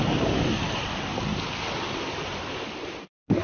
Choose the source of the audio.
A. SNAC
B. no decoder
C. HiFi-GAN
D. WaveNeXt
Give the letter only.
B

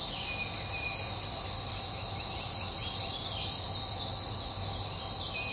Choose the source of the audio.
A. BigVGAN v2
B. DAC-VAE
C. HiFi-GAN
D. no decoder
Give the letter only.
D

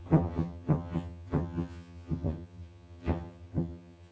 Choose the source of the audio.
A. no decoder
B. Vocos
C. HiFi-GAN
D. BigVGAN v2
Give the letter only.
C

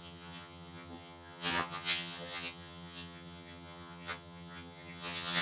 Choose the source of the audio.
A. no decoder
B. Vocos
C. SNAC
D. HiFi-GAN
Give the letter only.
D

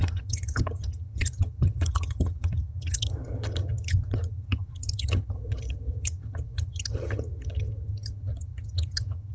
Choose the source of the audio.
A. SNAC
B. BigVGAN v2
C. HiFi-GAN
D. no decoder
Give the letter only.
C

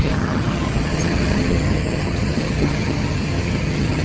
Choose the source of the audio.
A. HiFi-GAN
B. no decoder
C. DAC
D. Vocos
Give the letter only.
A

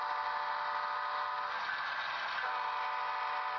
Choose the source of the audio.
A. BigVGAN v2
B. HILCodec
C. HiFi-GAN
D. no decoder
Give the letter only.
D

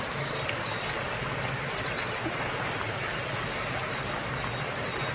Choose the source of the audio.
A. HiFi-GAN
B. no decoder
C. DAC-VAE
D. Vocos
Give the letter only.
B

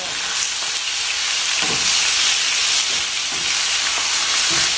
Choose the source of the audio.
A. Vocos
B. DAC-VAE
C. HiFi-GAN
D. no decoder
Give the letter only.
D